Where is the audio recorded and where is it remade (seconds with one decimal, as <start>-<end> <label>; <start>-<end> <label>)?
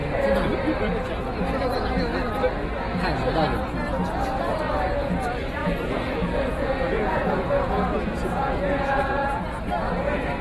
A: 0.0-5.6 recorded; 5.6-9.4 remade; 9.4-10.4 recorded